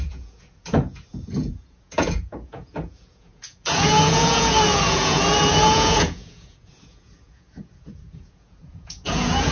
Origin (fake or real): fake